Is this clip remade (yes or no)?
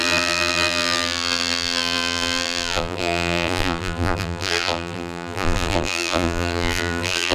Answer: yes